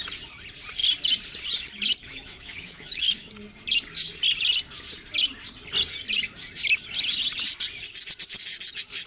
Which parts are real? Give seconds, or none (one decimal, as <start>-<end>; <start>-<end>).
0.0-2.0; 3.3-9.1